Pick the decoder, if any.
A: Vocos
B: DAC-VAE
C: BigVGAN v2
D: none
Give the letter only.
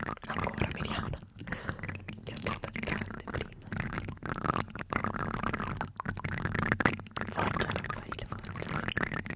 D